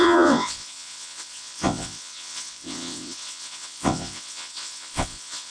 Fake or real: fake